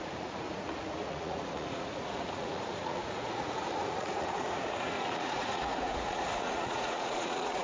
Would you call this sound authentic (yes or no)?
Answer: no